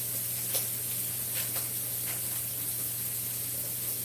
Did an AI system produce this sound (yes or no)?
no